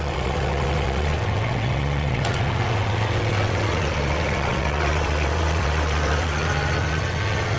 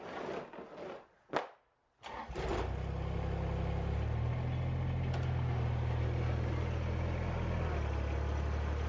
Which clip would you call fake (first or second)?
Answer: first